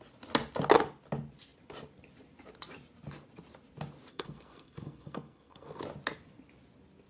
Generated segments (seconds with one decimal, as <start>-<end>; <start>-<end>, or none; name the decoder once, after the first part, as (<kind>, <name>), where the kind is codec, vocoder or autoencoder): 4.1-5.8 (codec, SNAC)